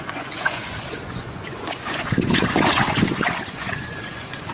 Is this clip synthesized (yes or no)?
yes